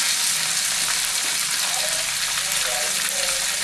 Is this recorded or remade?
recorded